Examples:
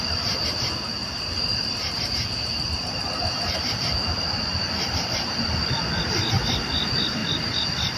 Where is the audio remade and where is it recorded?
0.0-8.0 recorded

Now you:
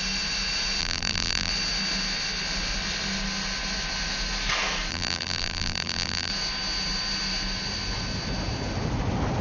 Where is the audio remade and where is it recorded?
0.0-0.8 recorded; 0.8-1.5 remade; 1.5-4.9 recorded; 4.9-6.3 remade; 6.3-9.4 recorded

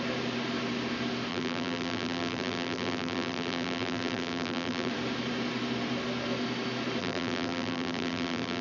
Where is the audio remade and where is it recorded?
0.0-1.3 recorded; 1.3-4.9 remade; 4.9-7.0 recorded; 7.0-8.6 remade

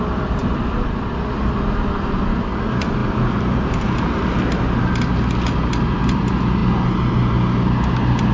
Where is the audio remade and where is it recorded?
0.0-0.4 recorded; 0.4-1.1 remade; 1.1-3.0 recorded; 3.0-3.7 remade; 3.7-8.3 recorded

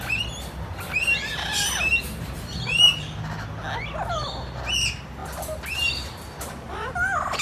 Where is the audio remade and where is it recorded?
0.0-5.2 recorded; 5.2-6.9 remade; 6.9-7.4 recorded

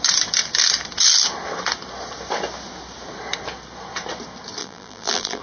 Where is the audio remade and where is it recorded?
0.0-4.6 recorded; 4.6-5.4 remade